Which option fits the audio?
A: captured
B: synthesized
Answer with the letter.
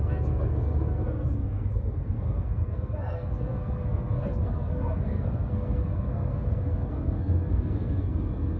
B